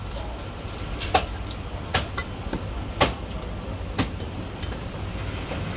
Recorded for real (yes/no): yes